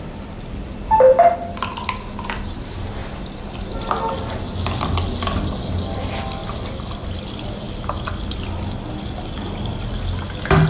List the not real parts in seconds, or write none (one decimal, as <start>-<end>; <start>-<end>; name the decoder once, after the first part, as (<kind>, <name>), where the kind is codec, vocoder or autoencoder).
none